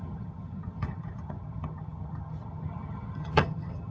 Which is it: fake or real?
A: fake